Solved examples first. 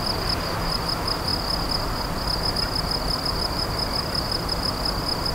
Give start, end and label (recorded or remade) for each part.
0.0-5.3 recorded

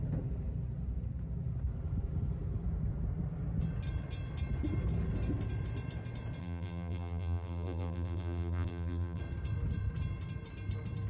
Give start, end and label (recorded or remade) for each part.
0.0-6.4 recorded; 6.4-9.2 remade; 9.2-11.1 recorded

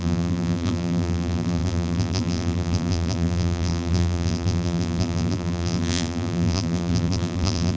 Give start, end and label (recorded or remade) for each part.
0.0-7.8 remade

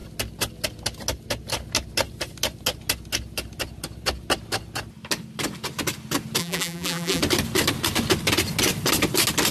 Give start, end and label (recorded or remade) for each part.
0.0-6.4 recorded; 6.4-7.2 remade; 7.2-9.5 recorded

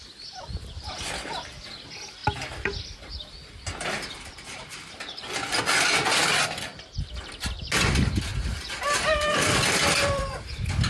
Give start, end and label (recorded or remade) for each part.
0.0-2.2 recorded; 2.2-5.6 remade; 5.6-6.7 recorded; 6.7-7.7 remade; 7.7-8.3 recorded; 8.3-10.2 remade; 10.2-10.9 recorded

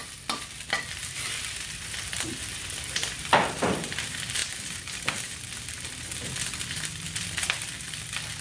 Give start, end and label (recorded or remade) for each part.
0.0-0.6 recorded; 0.6-8.4 remade

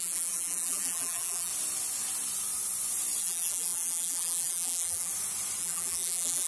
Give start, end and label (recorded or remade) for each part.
0.0-1.5 remade; 1.5-3.2 recorded; 3.2-5.1 remade; 5.1-5.6 recorded; 5.6-6.5 remade